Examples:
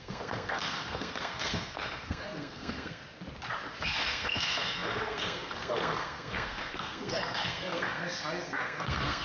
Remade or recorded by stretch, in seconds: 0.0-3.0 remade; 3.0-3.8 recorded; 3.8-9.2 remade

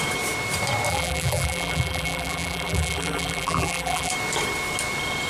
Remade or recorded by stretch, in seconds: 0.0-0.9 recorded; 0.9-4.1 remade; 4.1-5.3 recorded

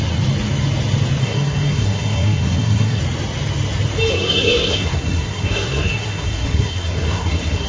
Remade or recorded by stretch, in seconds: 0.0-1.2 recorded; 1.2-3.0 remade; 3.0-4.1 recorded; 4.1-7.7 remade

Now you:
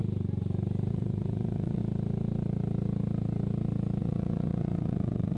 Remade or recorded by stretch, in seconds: 0.0-0.9 recorded; 0.9-1.8 remade; 1.8-4.0 recorded; 4.0-5.4 remade

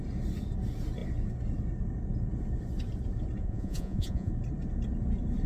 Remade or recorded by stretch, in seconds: 0.0-3.4 recorded; 3.4-4.3 remade; 4.3-5.5 recorded

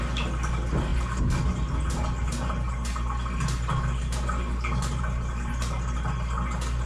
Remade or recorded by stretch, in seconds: 0.0-6.9 recorded